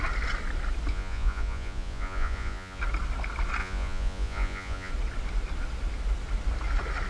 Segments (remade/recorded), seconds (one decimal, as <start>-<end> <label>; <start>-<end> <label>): 0.0-0.9 recorded; 0.9-2.8 remade; 2.8-3.6 recorded; 3.6-4.9 remade; 4.9-7.1 recorded